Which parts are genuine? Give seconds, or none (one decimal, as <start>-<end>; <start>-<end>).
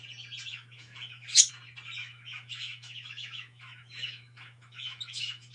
0.0-0.5; 1.5-2.0